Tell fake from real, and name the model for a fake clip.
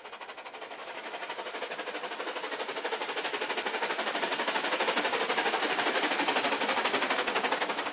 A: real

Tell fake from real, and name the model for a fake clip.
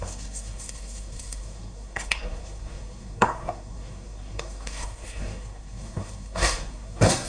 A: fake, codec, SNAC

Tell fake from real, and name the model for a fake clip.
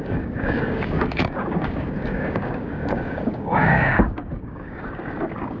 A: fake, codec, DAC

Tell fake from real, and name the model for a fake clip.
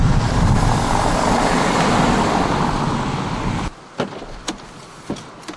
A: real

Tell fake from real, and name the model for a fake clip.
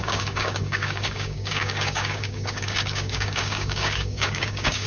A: fake, codec, DAC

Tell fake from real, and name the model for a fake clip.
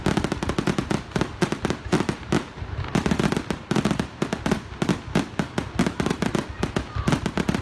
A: real